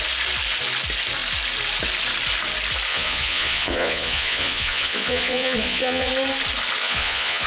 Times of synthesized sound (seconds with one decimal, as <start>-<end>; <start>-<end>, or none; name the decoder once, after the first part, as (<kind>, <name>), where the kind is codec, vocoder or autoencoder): 2.9-6.1 (vocoder, Vocos); 6.8-7.5